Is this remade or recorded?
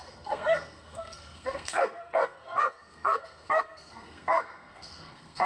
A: remade